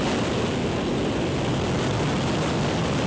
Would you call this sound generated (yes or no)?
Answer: no